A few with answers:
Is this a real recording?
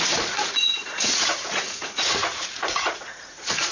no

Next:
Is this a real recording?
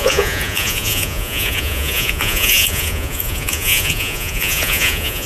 no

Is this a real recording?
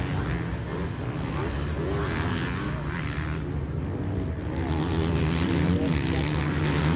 yes